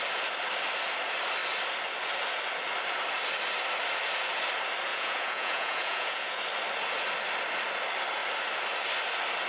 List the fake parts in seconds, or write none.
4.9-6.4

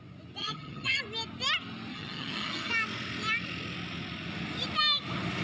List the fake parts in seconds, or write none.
0.4-1.0; 1.9-2.7

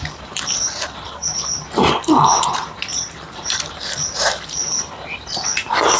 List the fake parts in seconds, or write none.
2.9-3.7